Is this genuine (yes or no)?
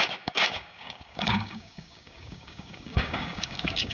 no